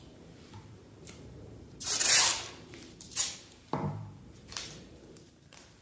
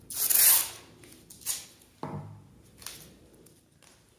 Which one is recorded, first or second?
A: second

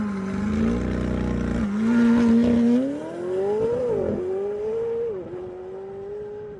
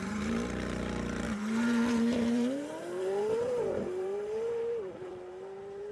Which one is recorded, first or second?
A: first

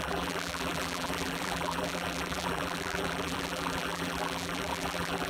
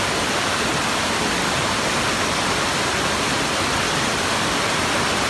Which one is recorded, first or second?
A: second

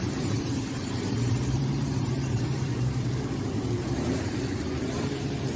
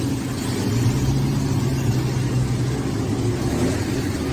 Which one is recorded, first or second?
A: second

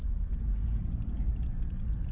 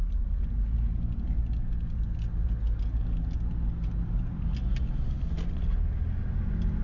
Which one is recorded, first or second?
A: second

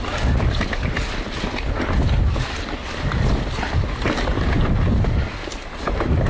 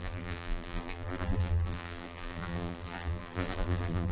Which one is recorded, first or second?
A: first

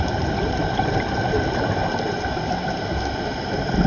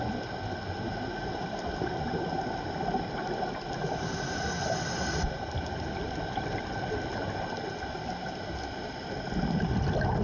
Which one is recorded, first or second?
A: second